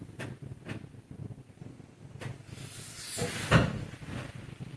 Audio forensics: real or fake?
real